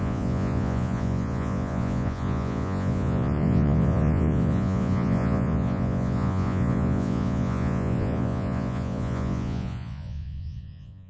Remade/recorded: remade